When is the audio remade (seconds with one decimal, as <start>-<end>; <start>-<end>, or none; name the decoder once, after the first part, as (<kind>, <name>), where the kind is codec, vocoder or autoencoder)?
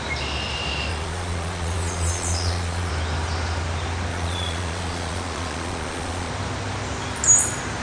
0.9-2.9 (vocoder, Vocos); 4.1-6.3